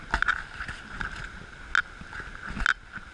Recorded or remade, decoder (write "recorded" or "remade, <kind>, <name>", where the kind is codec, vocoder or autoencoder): recorded